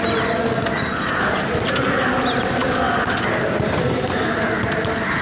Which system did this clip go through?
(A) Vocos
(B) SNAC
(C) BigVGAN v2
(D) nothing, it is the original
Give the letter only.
D